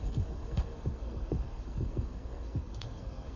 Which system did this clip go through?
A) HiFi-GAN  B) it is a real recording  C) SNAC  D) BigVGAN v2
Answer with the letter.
C